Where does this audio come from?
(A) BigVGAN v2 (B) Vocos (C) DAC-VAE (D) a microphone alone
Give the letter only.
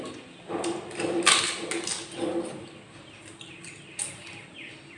D